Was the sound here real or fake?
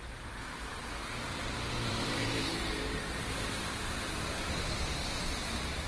fake